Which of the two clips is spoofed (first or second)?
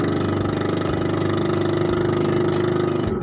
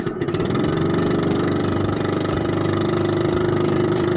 second